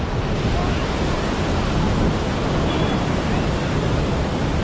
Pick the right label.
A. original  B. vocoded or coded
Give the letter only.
A